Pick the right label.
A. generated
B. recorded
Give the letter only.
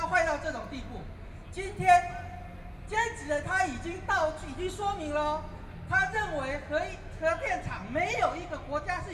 B